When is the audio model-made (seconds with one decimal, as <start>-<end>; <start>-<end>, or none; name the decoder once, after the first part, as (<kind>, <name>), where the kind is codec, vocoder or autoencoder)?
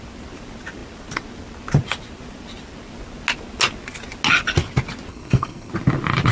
5.1-5.7 (codec, SNAC)